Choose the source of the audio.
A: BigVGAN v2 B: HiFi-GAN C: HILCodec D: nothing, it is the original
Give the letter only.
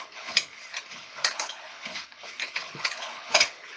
C